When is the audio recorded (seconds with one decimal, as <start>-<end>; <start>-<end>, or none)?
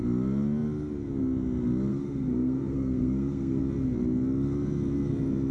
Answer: 0.0-1.9; 3.6-5.5